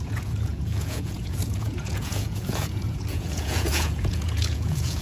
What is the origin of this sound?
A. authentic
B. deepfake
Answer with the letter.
B